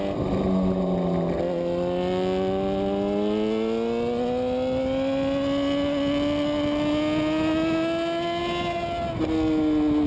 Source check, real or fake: real